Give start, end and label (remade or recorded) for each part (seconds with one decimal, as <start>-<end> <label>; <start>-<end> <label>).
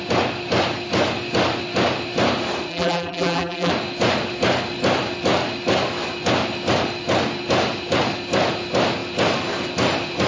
0.0-2.7 recorded; 2.7-3.7 remade; 3.7-10.3 recorded